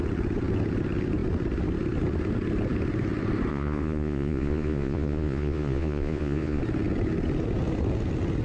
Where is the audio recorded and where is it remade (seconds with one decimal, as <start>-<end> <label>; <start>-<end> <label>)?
0.0-3.5 recorded; 3.5-6.6 remade; 6.6-8.4 recorded

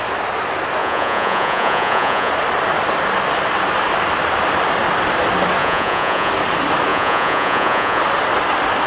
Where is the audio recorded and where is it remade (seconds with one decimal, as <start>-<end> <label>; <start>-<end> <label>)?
0.0-0.8 recorded; 0.8-2.3 remade; 2.3-5.6 recorded; 5.6-6.3 remade; 6.3-6.9 recorded; 6.9-8.0 remade; 8.0-8.9 recorded

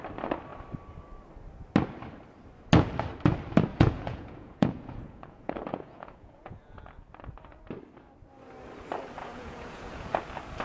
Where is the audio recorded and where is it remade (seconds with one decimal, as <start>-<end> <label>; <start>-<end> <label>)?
0.0-3.7 recorded; 3.7-6.8 remade; 6.8-9.2 recorded; 9.2-10.2 remade; 10.2-10.6 recorded

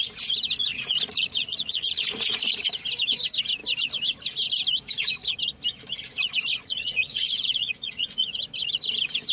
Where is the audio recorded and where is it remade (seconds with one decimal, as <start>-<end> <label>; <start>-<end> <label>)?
0.0-0.7 recorded; 0.7-2.7 remade; 2.7-6.6 recorded; 6.6-8.3 remade; 8.3-9.3 recorded

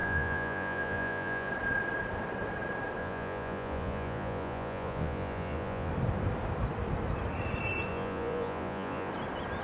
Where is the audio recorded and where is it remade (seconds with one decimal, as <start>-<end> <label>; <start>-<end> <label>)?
0.0-1.5 remade; 1.5-3.0 recorded; 3.0-5.9 remade; 5.9-7.9 recorded; 7.9-9.1 remade; 9.1-9.6 recorded

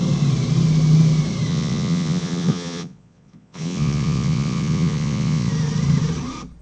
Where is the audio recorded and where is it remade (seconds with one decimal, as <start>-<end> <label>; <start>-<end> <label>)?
0.0-1.5 recorded; 1.5-5.5 remade; 5.5-6.6 recorded